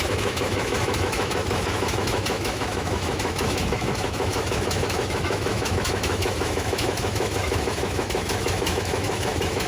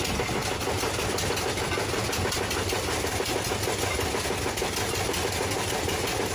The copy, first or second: first